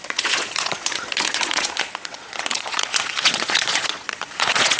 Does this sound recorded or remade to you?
remade